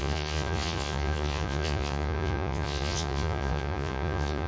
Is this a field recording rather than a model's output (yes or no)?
no